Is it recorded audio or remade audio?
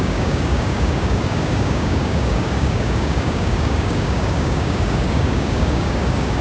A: remade